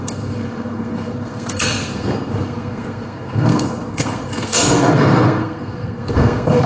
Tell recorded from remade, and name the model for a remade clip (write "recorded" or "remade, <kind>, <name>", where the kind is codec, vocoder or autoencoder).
remade, codec, SNAC